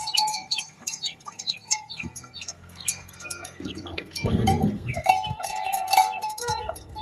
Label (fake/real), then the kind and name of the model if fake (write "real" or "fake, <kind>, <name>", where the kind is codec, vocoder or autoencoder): fake, codec, SNAC